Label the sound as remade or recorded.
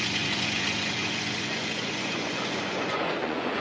remade